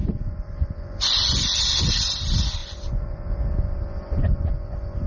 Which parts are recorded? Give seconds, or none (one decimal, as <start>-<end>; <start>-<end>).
1.9-2.6; 4.5-5.1